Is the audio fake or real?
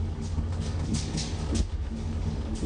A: fake